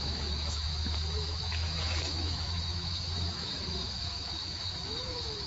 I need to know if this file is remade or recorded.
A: remade